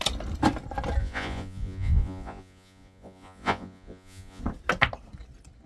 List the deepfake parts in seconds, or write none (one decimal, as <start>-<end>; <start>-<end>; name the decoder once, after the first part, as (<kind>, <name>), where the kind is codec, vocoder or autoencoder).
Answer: 1.0-4.4 (vocoder, Vocos)

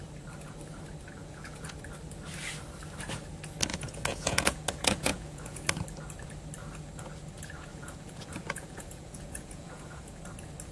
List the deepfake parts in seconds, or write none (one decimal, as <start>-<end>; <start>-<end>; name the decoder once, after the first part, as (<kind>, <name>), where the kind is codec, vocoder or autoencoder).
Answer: 1.2-1.8 (vocoder, Vocos); 3.7-5.6; 7.7-10.2

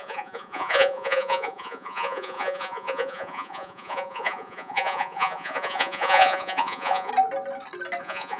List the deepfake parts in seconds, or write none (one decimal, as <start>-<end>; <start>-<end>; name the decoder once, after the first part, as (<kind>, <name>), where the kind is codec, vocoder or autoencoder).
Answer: 0.0-7.1 (vocoder, Vocos); 8.0-8.4

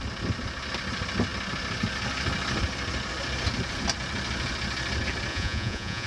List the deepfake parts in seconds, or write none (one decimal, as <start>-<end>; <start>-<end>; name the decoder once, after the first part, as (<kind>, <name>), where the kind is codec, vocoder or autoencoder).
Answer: 5.3-6.1 (vocoder, Vocos)

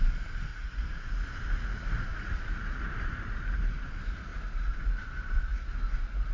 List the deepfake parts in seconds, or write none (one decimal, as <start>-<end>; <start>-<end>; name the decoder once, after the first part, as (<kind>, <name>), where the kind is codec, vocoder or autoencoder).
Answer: 0.5-1.1 (vocoder, Vocos); 2.1-2.9

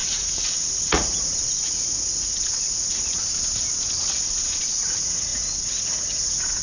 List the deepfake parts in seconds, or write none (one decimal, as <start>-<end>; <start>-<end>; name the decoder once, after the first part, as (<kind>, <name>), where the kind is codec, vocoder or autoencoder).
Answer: 0.0-3.2 (vocoder, Vocos); 4.1-6.6

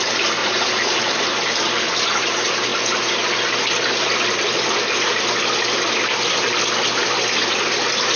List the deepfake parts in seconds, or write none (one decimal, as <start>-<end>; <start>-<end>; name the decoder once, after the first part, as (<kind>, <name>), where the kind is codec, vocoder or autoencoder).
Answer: 0.4-1.0 (vocoder, Vocos)